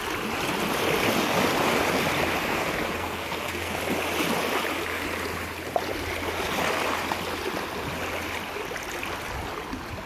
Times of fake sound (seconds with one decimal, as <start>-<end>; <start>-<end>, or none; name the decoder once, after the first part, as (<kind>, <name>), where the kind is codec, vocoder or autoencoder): 2.4-3.8 (codec, SNAC)